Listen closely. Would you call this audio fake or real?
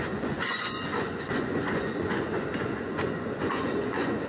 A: fake